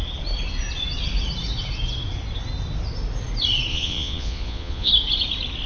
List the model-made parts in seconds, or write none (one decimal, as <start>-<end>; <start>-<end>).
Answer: 3.7-4.9